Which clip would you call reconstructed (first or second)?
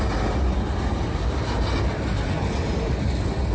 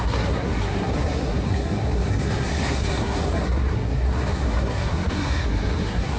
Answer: second